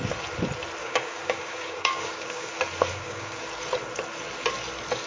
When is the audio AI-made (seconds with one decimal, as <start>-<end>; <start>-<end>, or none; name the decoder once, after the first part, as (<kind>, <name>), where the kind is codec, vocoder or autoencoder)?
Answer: 0.8-2.5 (codec, DAC); 2.9-3.4